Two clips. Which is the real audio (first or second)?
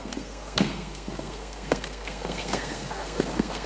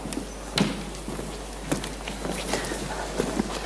second